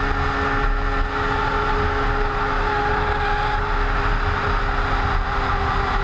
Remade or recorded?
recorded